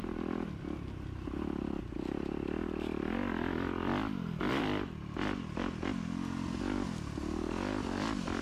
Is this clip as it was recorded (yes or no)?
yes